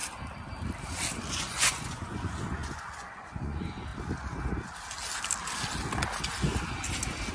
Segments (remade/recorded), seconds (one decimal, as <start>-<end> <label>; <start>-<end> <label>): 0.0-1.3 recorded; 1.3-3.9 remade; 3.9-7.3 recorded